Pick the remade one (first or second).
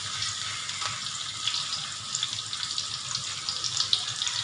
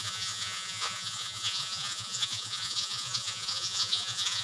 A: second